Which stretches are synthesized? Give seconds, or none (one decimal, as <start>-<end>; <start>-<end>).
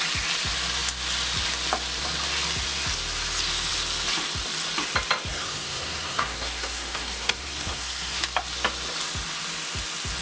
5.3-8.2